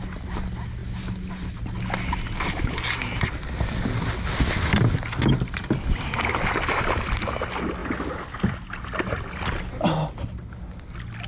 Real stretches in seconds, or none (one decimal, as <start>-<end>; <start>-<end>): 0.0-11.3